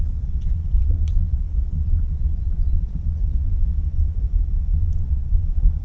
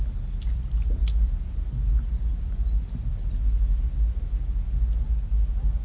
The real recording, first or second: second